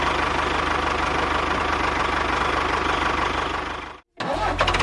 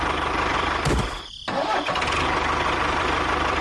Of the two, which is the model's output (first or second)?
second